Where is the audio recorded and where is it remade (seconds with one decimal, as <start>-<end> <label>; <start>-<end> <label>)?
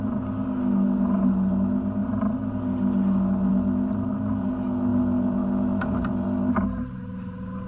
0.0-7.7 recorded